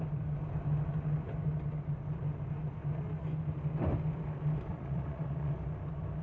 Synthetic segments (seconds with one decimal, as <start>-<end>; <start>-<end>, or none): 4.7-5.5